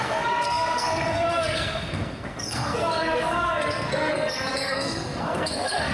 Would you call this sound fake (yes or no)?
yes